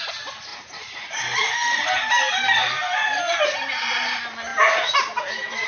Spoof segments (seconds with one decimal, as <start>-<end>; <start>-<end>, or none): 0.5-3.2